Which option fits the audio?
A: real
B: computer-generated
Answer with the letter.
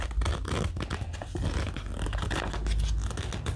A